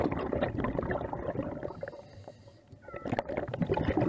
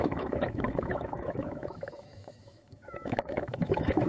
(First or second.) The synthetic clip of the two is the second